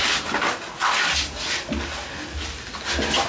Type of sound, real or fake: real